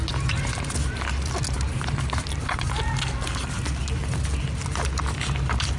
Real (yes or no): yes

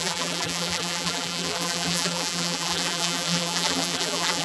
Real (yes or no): no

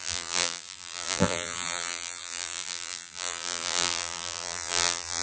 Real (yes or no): no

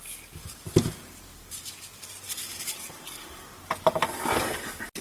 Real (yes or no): yes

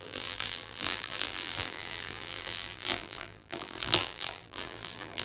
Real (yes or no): no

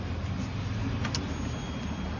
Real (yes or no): yes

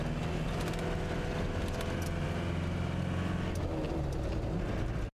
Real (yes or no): yes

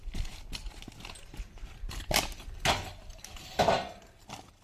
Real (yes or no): yes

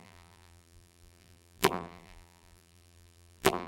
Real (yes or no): no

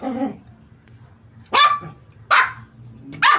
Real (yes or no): yes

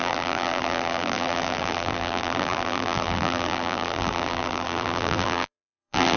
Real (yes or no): no